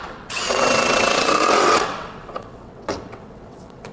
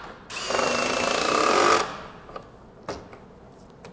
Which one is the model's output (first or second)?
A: first